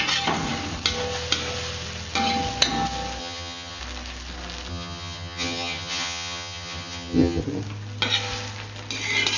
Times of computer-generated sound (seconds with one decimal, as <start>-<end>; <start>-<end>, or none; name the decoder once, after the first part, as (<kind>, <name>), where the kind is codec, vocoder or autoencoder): 3.2-3.8 (vocoder, HiFi-GAN); 4.7-7.4